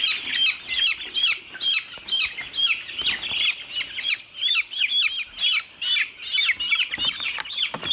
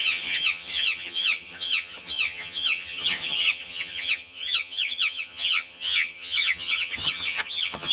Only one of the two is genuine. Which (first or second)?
first